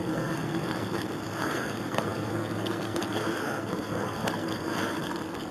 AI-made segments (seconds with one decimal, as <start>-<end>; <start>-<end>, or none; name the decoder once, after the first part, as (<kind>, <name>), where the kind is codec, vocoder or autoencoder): 0.0-5.5 (codec, SNAC)